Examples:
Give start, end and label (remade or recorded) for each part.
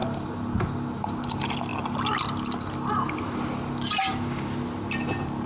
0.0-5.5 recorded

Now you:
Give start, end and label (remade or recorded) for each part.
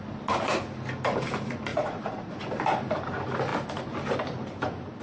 0.0-1.7 recorded; 1.7-2.3 remade; 2.3-5.0 recorded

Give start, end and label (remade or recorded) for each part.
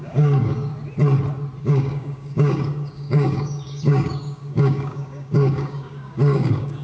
0.0-0.7 remade; 0.7-1.6 recorded; 1.6-6.8 remade